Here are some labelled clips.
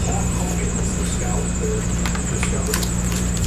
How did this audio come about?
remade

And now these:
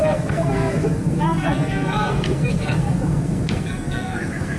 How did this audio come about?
remade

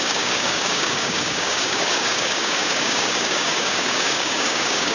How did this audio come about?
remade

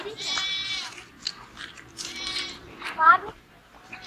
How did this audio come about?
remade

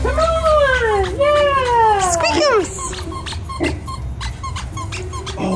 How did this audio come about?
recorded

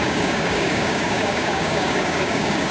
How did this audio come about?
remade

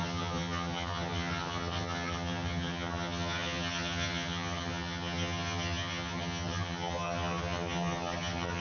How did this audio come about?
remade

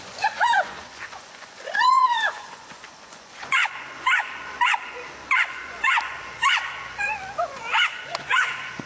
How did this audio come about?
remade